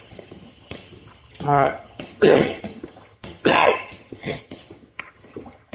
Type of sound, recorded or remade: remade